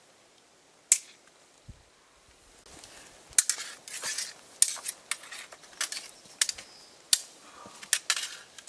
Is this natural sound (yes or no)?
yes